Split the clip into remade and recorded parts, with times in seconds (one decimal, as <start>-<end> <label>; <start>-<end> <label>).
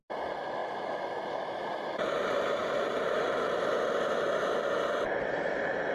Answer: 0.0-0.6 remade; 0.6-1.3 recorded; 1.3-2.6 remade; 2.6-5.9 recorded